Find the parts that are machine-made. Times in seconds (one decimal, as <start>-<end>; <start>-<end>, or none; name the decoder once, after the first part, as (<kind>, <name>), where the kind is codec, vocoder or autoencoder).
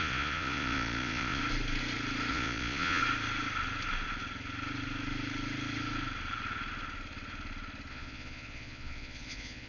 0.0-1.4 (vocoder, Vocos); 2.3-3.0; 7.9-9.7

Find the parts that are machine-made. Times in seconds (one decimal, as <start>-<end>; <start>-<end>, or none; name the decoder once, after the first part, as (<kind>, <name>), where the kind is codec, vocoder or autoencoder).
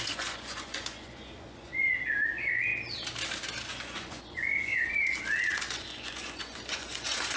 0.0-1.7 (vocoder, Vocos); 2.3-2.7; 3.7-4.7; 5.5-7.4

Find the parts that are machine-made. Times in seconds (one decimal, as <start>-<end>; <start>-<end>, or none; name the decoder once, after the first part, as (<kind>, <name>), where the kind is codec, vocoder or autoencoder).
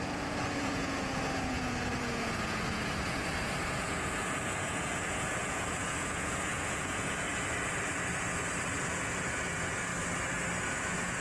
0.0-7.3 (vocoder, Vocos); 8.9-9.9; 10.6-11.2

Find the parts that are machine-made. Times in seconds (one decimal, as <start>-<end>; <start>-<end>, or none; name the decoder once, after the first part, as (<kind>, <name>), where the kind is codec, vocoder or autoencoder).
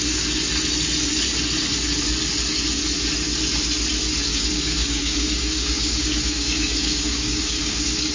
4.3-8.1 (codec, DAC)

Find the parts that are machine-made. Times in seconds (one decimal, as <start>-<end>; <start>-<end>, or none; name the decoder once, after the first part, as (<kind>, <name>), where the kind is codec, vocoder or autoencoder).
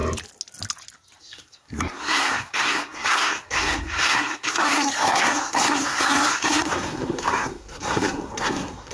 1.2-8.9 (codec, SNAC)